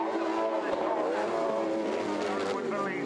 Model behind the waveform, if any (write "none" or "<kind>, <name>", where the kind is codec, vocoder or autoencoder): none